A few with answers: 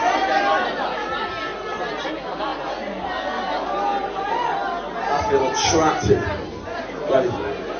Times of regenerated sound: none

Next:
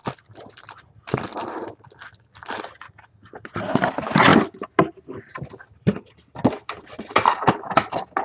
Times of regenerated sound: none

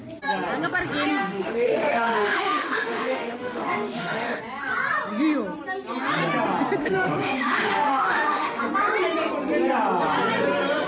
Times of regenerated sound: 1.1-4.4 (autoencoder, DAC-VAE); 6.8-8.6